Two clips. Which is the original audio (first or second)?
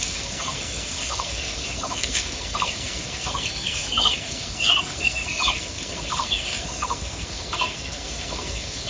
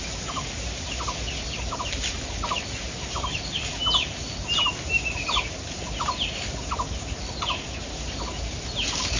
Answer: second